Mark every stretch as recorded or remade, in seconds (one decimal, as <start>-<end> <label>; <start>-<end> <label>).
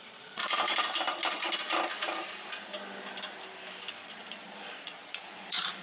0.0-0.4 remade; 0.4-3.9 recorded; 3.9-5.8 remade